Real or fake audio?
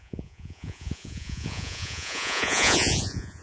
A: fake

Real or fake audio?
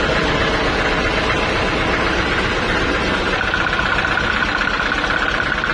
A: real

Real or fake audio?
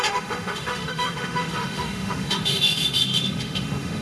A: fake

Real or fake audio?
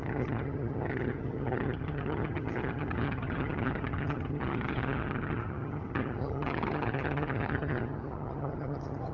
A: fake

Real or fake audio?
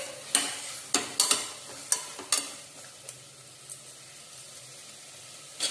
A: real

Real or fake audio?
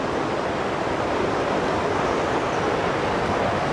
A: real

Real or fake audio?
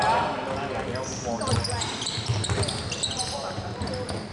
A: real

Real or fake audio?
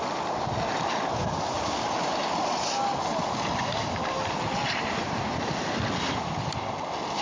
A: real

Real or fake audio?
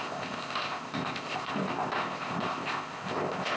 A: fake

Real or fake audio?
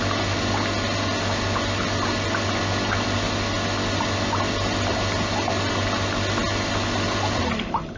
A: real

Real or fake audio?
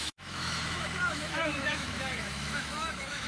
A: fake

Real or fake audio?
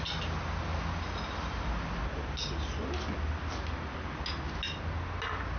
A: real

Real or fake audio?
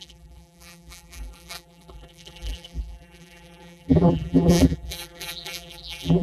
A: fake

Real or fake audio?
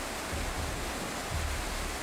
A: real